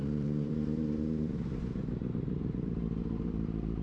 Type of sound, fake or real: fake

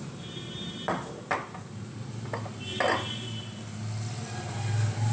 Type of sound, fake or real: real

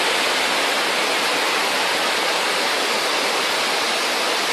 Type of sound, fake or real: real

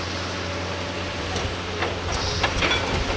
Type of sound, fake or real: real